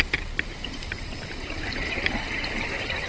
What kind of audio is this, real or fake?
fake